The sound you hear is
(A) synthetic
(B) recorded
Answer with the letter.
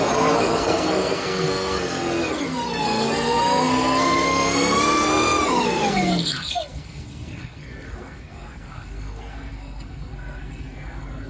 A